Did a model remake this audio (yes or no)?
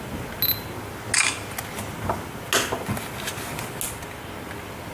no